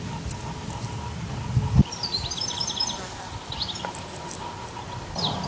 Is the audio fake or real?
real